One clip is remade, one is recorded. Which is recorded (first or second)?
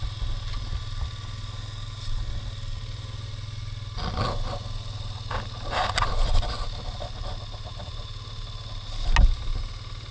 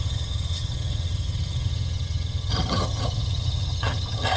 first